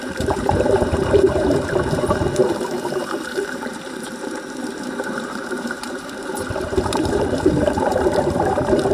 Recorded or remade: remade